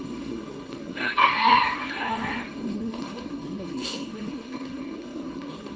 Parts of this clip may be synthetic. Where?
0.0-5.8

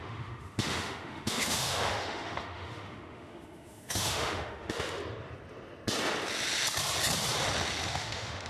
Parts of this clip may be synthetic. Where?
0.0-5.0; 7.9-8.5

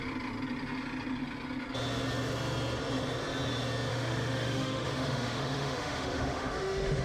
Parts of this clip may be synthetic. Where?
3.9-7.0

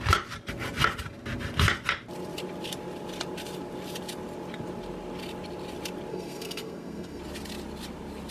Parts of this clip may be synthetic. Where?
6.1-7.2

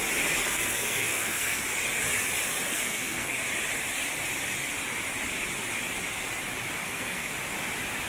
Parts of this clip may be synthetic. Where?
0.4-1.6; 2.7-3.4; 6.8-7.3